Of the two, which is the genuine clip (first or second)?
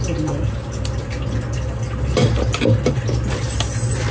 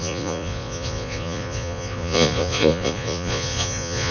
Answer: first